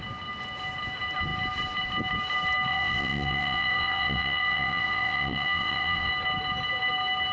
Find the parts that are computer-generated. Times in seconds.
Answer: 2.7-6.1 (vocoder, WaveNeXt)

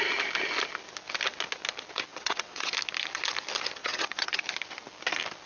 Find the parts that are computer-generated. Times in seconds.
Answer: 2.1-2.7 (vocoder, WaveNeXt); 3.8-4.4